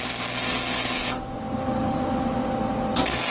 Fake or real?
real